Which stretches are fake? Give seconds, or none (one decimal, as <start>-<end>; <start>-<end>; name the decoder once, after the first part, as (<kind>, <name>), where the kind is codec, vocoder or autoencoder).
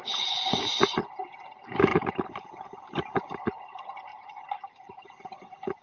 1.9-3.4 (vocoder, BigVGAN v2); 4.1-5.0